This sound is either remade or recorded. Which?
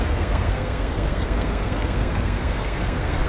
remade